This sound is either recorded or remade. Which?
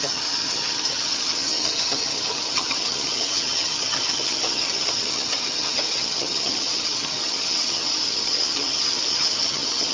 remade